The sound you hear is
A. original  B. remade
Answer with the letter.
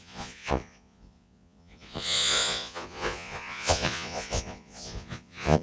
B